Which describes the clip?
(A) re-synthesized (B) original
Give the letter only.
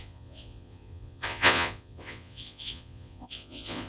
A